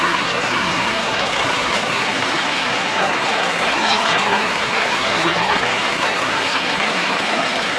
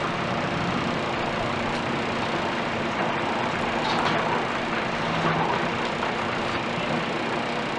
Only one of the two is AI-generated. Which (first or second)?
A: first